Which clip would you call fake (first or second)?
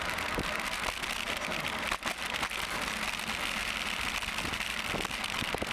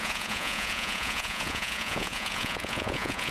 second